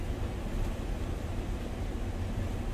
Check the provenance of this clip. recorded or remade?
recorded